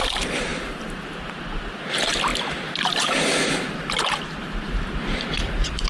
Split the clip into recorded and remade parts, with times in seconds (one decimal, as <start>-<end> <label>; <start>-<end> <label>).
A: 0.0-5.9 recorded

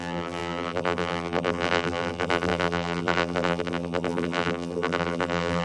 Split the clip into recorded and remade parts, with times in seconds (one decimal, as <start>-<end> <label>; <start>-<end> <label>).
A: 0.0-5.6 remade

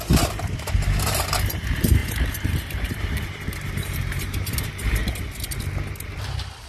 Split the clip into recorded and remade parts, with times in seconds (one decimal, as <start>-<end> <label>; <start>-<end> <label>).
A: 0.0-5.0 remade; 5.0-6.7 recorded

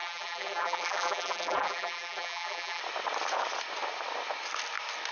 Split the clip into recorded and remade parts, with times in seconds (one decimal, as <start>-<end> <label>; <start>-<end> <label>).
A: 0.0-2.8 remade; 2.8-5.1 recorded

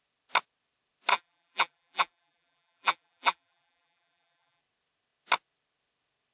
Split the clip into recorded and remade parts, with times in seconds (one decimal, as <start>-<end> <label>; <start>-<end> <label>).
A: 0.0-1.1 recorded; 1.1-4.6 remade; 4.6-6.3 recorded